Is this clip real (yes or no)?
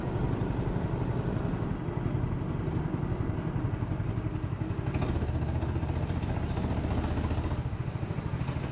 yes